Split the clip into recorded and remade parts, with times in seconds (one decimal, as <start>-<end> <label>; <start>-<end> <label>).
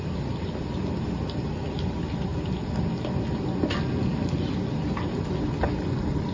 0.0-4.8 recorded; 4.8-5.6 remade; 5.6-6.3 recorded